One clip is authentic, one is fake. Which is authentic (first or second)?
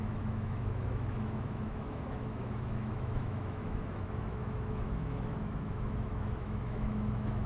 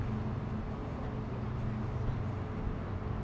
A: second